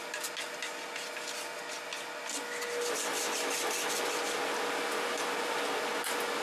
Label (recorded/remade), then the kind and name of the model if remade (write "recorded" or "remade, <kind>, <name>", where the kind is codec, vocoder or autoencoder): recorded